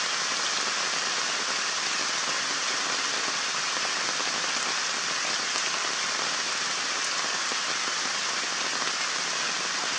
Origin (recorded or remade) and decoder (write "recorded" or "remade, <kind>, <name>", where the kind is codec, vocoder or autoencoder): recorded